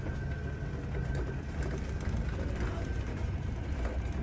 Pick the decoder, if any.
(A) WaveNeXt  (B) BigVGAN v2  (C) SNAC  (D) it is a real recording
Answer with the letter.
D